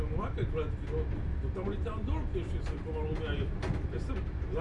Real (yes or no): yes